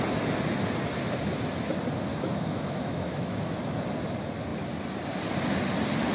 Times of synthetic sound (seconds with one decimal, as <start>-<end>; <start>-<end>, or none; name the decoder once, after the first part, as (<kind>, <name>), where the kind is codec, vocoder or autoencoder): 2.1-3.6 (autoencoder, DAC-VAE)